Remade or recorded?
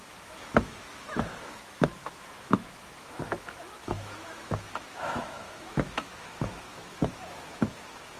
remade